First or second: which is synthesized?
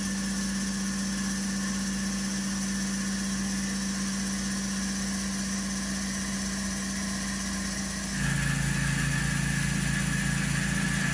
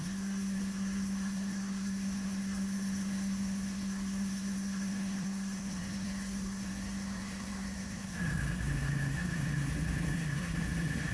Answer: second